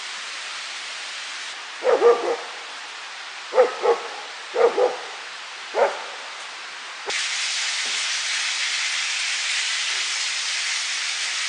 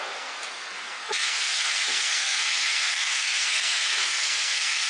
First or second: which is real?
first